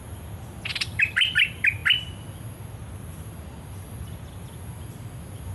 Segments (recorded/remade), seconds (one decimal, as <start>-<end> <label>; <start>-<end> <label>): 0.0-0.7 recorded; 0.7-1.3 remade; 1.3-5.5 recorded